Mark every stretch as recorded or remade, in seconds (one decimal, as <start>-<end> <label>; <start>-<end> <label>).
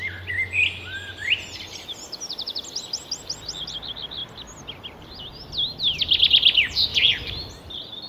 0.0-6.9 recorded; 6.9-7.6 remade; 7.6-8.1 recorded